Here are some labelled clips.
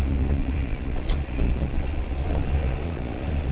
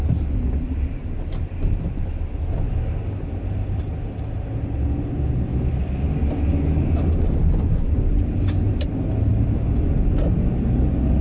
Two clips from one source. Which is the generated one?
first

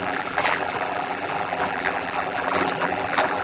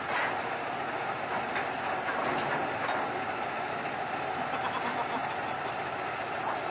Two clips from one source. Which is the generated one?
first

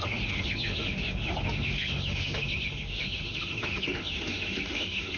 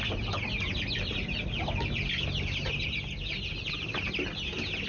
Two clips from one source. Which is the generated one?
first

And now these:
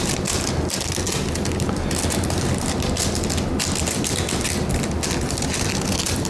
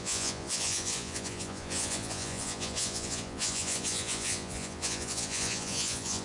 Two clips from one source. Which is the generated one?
second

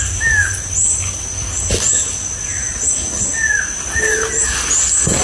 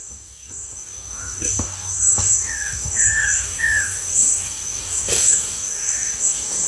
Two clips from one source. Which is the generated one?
second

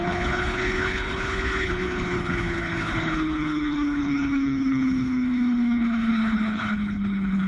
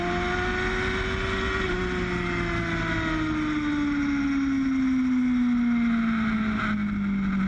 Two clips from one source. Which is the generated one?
first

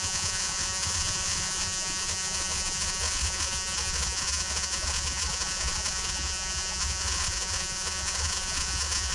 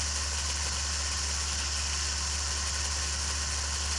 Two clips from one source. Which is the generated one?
first